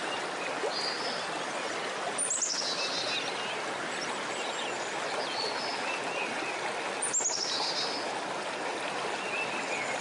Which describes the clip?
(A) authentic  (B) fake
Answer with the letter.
A